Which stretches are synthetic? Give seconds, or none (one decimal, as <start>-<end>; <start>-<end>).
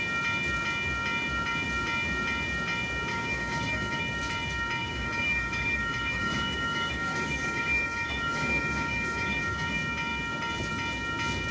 3.1-4.0; 4.8-9.7